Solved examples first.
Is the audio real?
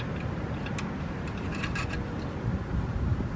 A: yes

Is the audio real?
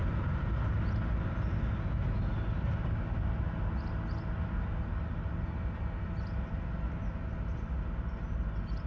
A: yes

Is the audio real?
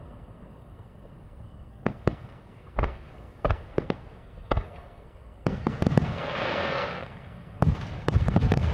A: no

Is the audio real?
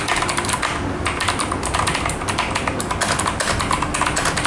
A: yes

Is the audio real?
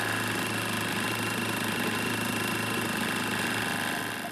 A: yes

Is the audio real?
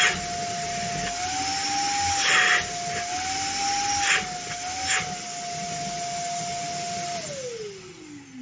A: yes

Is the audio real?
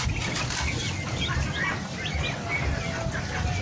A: yes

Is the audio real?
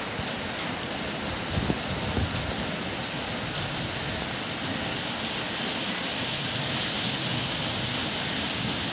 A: yes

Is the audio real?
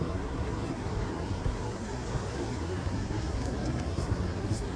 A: no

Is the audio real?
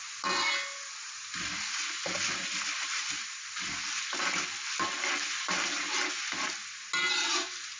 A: yes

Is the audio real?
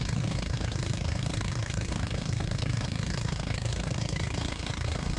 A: no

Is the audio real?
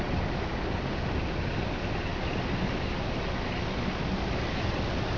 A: yes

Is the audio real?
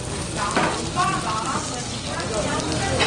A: yes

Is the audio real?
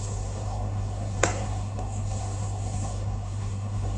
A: no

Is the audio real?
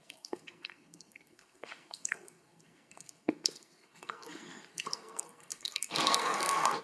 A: no